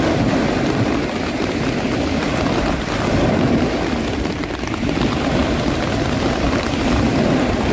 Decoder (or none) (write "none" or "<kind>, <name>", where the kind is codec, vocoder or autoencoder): vocoder, BigVGAN v2